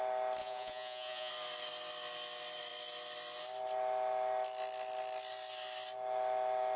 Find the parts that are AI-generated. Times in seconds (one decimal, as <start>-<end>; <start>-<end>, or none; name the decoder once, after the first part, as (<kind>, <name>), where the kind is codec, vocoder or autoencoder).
0.4-1.3 (vocoder, Vocos)